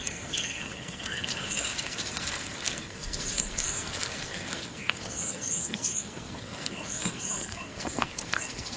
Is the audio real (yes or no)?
no